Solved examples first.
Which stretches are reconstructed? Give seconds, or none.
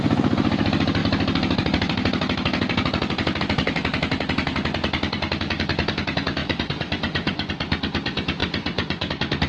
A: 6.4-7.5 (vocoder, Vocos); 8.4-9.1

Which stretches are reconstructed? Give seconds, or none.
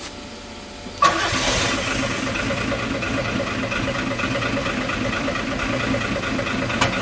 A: 4.6-5.6 (vocoder, BigVGAN v2)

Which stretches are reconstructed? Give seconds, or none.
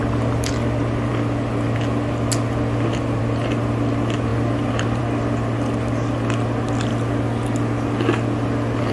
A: 0.0-1.1 (vocoder, BigVGAN v2); 3.2-4.3; 5.0-6.9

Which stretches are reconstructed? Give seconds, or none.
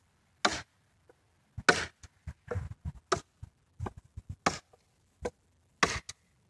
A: none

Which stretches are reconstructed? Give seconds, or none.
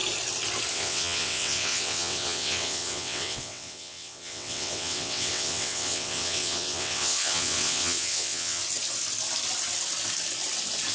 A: 0.7-8.6 (vocoder, WaveNeXt)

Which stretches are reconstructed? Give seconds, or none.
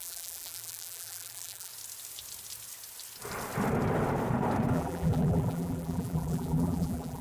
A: 0.0-1.7 (vocoder, BigVGAN v2); 4.7-7.2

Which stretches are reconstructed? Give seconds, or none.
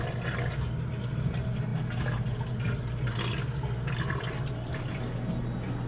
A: none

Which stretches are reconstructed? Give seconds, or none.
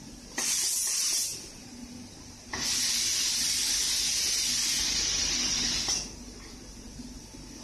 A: none